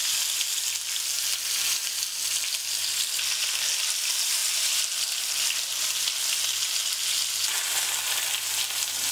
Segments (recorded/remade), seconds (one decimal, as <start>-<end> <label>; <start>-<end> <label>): 0.0-9.1 recorded